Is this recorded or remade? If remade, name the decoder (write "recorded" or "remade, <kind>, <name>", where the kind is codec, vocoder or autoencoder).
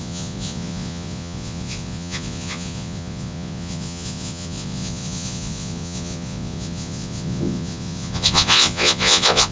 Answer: remade, vocoder, Vocos